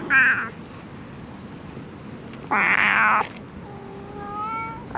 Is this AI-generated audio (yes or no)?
no